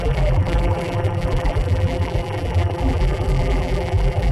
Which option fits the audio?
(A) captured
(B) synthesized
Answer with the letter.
B